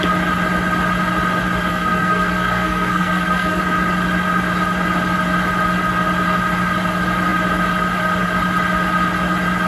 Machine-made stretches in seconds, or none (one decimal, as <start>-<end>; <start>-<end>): 1.7-3.6